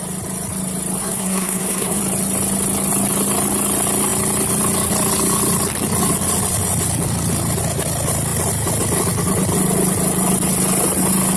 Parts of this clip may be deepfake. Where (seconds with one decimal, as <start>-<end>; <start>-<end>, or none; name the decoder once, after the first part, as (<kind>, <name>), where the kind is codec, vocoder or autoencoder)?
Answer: 1.0-2.0 (codec, SNAC)